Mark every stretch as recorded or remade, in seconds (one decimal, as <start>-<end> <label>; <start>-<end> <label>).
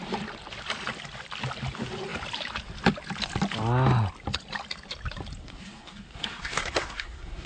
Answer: 0.0-5.4 recorded; 5.4-7.5 remade